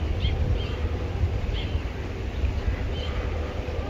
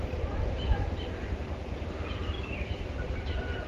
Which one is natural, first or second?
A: first